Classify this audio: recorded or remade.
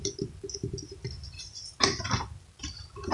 recorded